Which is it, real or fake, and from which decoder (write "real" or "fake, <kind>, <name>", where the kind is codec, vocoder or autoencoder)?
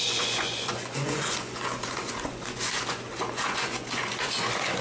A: fake, vocoder, Vocos